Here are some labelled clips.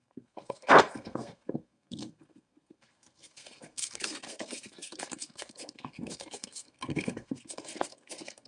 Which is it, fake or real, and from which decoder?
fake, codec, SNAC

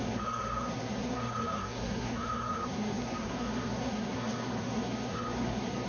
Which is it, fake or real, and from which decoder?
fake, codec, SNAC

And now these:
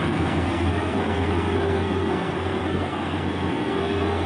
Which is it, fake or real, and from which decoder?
fake, codec, SNAC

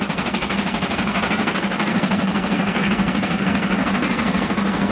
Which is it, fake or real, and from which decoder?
fake, codec, SNAC